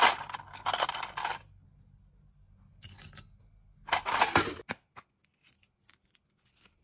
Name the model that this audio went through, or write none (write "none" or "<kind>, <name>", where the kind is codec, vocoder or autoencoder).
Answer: none